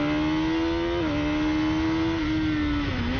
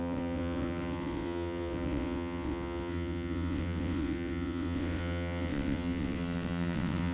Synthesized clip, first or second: second